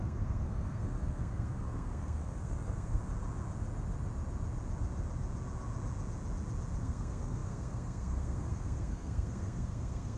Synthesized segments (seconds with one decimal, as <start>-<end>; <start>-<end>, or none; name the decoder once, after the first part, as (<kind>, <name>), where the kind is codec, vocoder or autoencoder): 0.0-3.0 (codec, SNAC); 6.8-10.2